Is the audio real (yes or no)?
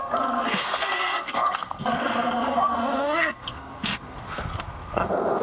no